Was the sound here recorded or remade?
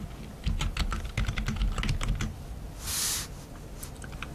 recorded